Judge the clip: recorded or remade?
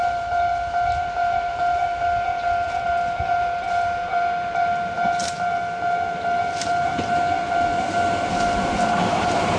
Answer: remade